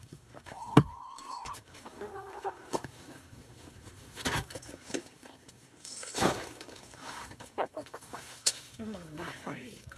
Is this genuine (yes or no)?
no